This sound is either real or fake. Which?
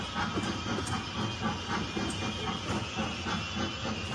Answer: real